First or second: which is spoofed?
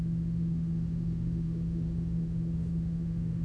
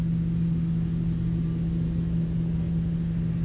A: first